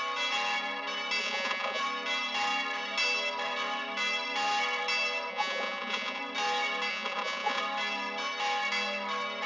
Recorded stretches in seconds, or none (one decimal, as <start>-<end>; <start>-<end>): 0.0-1.2; 1.8-5.3; 6.2-6.9; 7.6-9.5